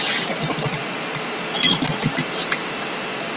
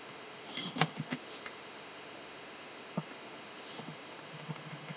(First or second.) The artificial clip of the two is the second